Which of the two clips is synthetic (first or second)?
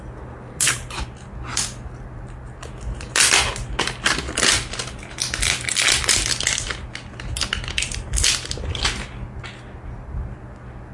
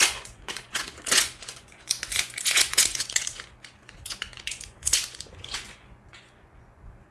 second